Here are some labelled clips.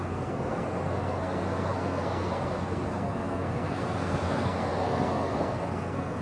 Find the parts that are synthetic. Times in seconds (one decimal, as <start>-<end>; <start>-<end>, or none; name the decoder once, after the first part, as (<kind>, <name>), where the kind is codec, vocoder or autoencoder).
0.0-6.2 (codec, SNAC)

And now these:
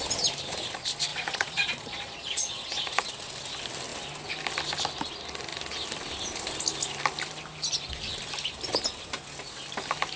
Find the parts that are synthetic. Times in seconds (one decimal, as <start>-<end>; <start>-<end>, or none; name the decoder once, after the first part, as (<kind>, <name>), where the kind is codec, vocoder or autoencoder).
1.1-3.0 (vocoder, Vocos)

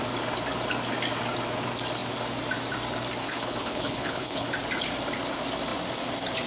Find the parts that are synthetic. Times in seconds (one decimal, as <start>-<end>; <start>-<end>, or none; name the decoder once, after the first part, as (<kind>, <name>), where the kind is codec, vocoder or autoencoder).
3.2-4.5 (codec, HILCodec)